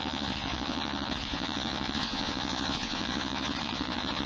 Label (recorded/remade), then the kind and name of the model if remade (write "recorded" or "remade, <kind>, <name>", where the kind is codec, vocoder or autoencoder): remade, vocoder, Vocos